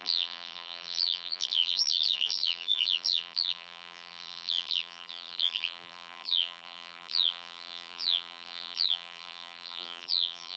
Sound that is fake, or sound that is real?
fake